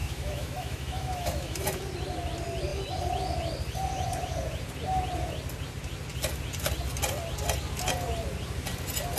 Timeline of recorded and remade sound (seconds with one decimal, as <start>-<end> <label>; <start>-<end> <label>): 0.0-1.8 remade; 1.8-9.2 recorded